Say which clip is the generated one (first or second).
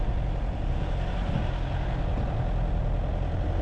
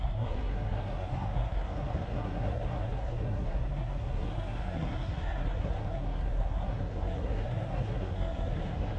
second